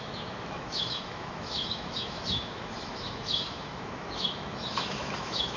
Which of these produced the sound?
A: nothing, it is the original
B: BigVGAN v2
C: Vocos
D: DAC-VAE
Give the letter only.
D